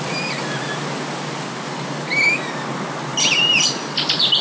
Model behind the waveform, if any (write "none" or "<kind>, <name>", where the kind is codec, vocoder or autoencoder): none